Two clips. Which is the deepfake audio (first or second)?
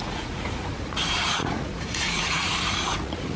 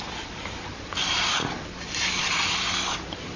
first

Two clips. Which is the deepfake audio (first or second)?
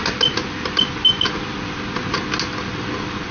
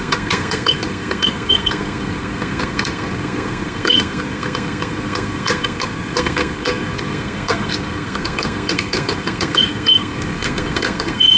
second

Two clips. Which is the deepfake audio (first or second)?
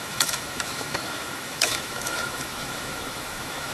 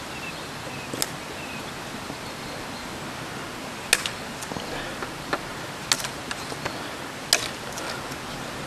first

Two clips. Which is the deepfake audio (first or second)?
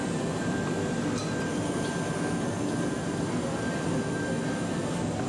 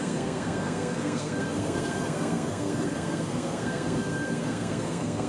second